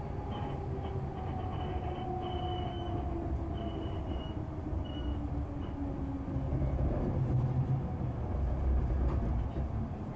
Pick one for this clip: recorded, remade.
recorded